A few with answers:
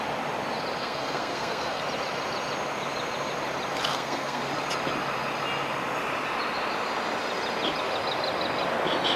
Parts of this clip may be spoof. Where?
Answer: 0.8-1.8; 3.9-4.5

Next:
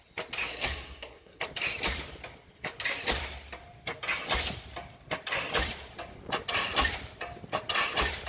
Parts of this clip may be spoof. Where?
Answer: 0.5-1.4

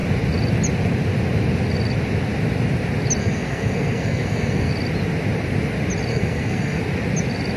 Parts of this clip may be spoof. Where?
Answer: 3.2-4.7; 6.1-6.8

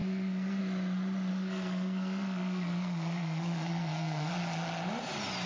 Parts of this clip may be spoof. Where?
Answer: 0.0-0.6; 1.3-4.3

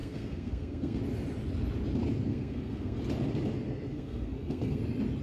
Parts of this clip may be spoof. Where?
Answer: 0.0-1.0; 2.3-3.0; 3.9-4.8

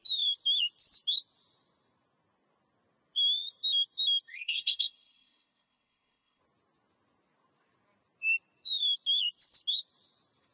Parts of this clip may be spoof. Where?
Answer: 4.3-6.4

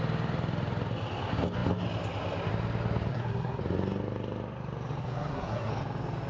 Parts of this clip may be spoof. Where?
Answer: 3.1-3.6; 5.0-5.7